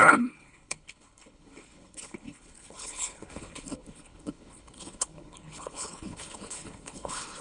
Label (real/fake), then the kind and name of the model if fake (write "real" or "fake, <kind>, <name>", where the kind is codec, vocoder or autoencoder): fake, codec, HILCodec